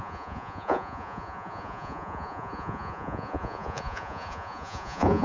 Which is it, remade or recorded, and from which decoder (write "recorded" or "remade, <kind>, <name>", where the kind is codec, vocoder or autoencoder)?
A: remade, vocoder, Vocos